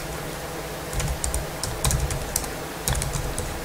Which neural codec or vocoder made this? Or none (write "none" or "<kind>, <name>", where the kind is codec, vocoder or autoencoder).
vocoder, BigVGAN v2